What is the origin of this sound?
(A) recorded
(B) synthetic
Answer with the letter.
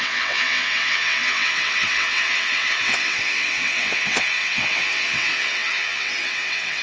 B